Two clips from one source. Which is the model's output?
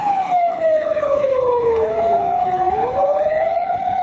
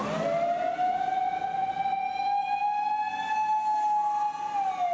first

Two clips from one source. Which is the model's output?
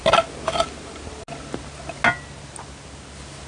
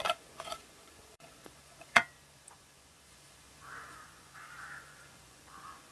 second